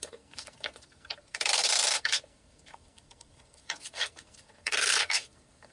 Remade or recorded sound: remade